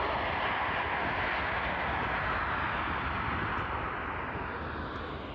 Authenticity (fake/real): real